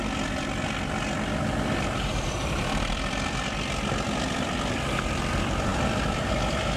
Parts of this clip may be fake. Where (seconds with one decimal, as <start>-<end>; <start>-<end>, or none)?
1.8-6.8